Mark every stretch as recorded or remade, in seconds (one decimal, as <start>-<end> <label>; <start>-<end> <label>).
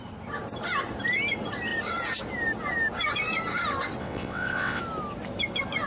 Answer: 0.0-4.0 recorded; 4.0-4.8 remade; 4.8-5.9 recorded